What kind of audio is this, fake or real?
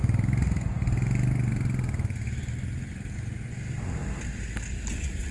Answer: real